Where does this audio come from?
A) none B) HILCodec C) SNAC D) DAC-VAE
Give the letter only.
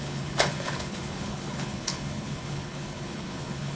B